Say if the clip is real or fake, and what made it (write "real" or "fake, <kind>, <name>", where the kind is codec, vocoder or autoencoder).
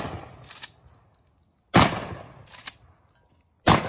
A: real